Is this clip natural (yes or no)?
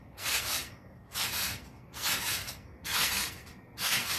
no